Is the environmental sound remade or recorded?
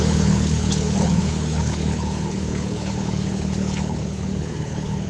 remade